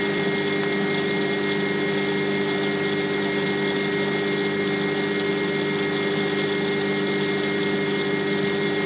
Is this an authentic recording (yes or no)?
yes